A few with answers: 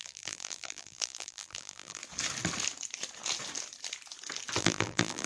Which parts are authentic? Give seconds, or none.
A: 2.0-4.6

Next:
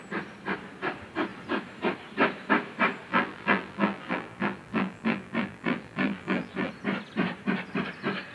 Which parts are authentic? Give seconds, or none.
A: 0.0-3.1; 6.7-8.3

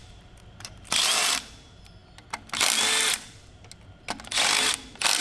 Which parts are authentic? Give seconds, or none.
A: 1.2-5.2

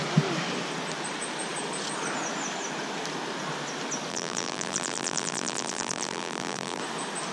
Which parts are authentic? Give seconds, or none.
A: 0.0-4.1; 6.8-7.3